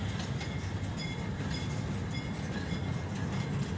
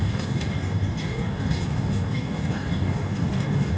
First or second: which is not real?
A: second